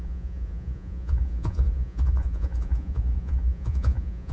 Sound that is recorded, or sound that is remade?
remade